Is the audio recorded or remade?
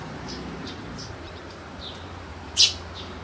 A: remade